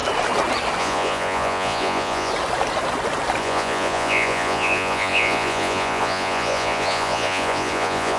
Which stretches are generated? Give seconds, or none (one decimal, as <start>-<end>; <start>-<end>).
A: 0.8-2.3; 3.4-8.2